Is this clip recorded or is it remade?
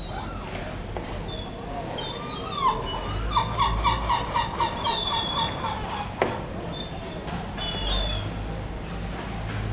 recorded